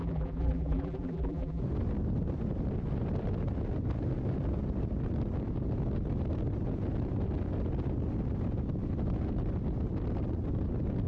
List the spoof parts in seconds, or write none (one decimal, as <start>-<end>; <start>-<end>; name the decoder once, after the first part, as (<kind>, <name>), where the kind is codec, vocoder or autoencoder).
0.0-1.6 (vocoder, BigVGAN v2)